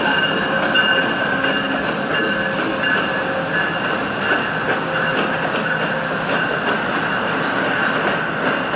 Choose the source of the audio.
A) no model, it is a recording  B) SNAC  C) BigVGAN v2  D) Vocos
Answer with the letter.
A